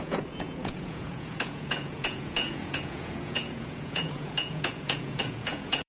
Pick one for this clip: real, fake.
fake